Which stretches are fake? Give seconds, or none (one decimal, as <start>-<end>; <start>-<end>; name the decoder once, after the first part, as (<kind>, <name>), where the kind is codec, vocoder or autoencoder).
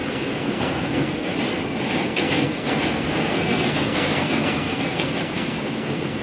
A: 0.0-1.3 (codec, SNAC); 2.0-6.2